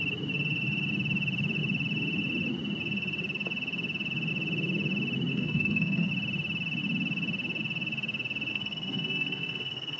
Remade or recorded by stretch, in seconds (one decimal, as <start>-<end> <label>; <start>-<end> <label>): 0.0-5.3 recorded; 5.3-6.1 remade; 6.1-8.5 recorded; 8.5-10.0 remade